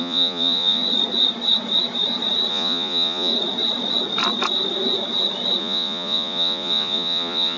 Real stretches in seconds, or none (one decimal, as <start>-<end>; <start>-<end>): 0.8-2.5; 3.3-5.6